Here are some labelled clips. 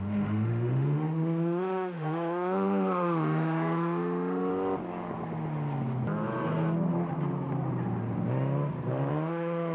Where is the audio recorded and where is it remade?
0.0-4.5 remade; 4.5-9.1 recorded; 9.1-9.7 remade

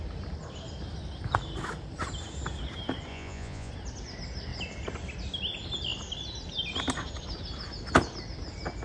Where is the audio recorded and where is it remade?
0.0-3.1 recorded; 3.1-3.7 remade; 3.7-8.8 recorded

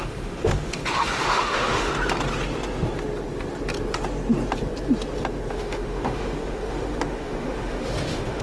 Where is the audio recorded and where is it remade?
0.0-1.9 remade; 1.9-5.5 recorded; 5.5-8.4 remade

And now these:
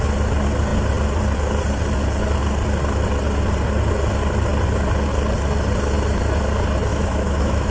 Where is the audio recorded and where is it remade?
0.0-6.9 recorded; 6.9-7.7 remade

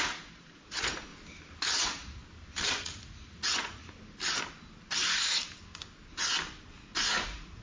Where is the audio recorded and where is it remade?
0.0-1.1 remade; 1.1-1.8 recorded; 1.8-2.2 remade; 2.2-2.8 recorded; 2.8-3.8 remade; 3.8-7.1 recorded; 7.1-7.6 remade

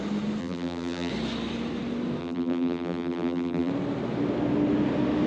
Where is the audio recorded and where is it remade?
0.0-0.4 recorded; 0.4-1.1 remade; 1.1-2.2 recorded; 2.2-3.7 remade; 3.7-5.3 recorded

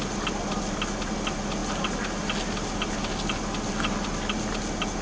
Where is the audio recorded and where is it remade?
0.0-5.0 recorded